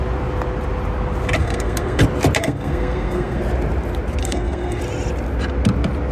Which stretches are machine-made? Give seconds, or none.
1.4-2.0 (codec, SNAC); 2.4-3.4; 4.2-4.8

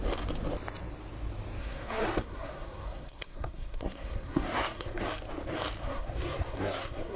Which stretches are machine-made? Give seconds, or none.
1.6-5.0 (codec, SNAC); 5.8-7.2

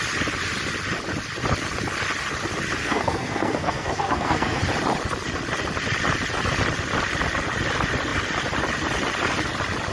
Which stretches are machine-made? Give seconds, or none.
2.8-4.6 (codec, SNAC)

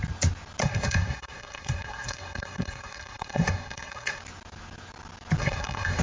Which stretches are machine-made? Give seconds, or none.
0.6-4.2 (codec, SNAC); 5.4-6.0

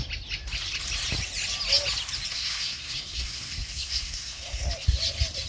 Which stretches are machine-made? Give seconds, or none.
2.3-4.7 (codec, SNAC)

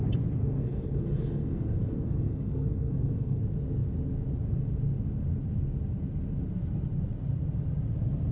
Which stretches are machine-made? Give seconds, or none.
0.4-3.4 (codec, SNAC)